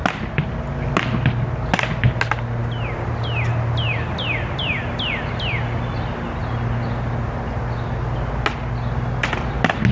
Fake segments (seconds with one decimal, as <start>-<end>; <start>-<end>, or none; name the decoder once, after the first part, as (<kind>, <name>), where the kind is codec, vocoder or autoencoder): none